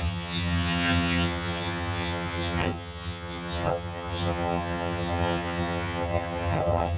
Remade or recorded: remade